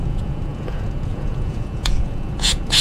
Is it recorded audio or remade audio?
remade